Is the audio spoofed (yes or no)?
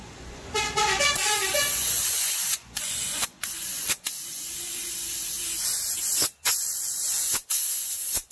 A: yes